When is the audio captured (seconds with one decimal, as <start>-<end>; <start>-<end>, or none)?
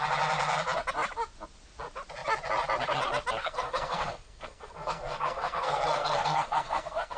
0.0-3.4